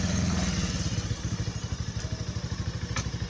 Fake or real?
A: real